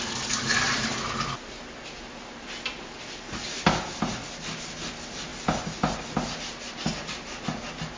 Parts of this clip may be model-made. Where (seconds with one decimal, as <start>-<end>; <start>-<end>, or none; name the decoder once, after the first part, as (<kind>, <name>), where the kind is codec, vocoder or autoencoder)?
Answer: none